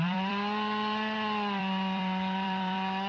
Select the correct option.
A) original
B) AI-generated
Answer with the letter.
B